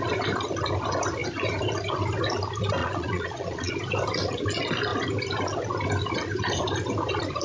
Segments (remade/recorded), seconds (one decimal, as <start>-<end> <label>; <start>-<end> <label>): 0.0-2.8 recorded; 2.8-3.7 remade; 3.7-7.4 recorded